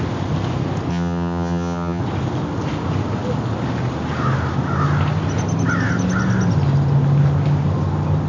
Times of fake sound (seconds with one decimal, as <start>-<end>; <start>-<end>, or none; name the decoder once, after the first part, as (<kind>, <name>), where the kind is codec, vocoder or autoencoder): 0.9-2.0 (vocoder, HiFi-GAN)